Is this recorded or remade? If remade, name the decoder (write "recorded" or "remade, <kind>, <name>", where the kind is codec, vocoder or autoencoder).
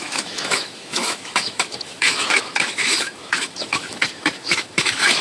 remade, autoencoder, DAC-VAE